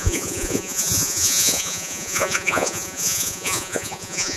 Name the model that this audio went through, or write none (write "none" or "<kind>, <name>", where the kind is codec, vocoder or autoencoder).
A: vocoder, Vocos